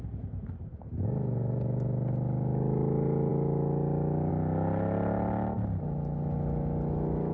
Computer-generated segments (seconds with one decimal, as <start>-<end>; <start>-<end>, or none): none